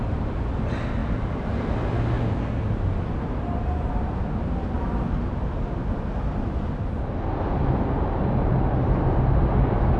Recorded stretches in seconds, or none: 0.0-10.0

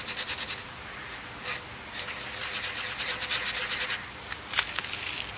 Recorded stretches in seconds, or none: 0.0-5.4

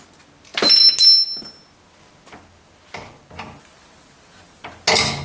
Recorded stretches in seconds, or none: 0.0-5.2

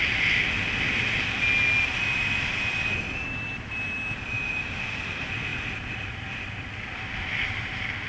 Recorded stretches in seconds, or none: 0.0-8.1

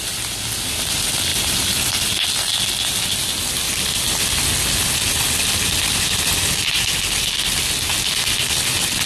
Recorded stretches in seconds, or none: 0.0-9.1

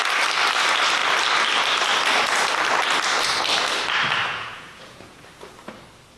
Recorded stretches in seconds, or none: 0.0-4.3; 5.2-6.2